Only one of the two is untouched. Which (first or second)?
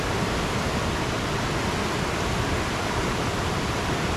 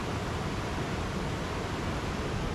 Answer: second